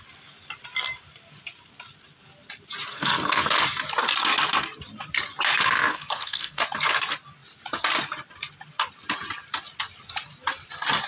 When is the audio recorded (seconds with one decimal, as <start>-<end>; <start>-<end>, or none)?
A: 0.0-2.9; 3.4-5.9; 6.6-11.1